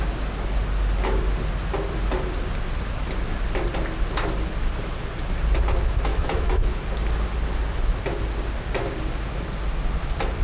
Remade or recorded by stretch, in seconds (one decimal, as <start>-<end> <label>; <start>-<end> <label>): 0.0-6.1 recorded; 6.1-6.8 remade; 6.8-10.4 recorded